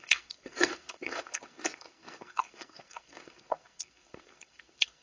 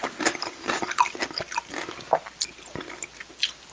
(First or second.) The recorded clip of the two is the second